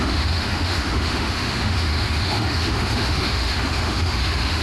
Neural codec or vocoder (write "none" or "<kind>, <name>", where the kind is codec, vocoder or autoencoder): autoencoder, DAC-VAE